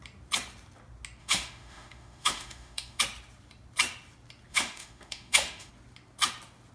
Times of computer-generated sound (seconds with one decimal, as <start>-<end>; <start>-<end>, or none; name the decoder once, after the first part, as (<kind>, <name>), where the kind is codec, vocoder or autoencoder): 1.2-3.0 (autoencoder, DAC-VAE); 4.5-5.7